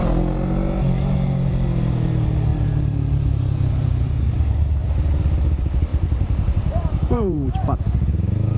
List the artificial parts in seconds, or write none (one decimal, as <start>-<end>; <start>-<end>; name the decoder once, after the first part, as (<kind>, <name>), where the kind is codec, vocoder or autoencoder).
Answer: 2.5-4.7 (vocoder, BigVGAN v2); 5.9-7.8